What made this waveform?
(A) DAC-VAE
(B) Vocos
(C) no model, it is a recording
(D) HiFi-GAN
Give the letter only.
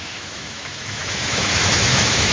A